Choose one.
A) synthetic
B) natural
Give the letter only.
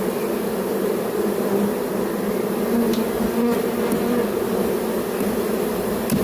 B